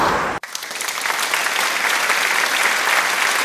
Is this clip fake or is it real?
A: real